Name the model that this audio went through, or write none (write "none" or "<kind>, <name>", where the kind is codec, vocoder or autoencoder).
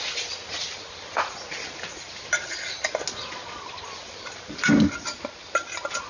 none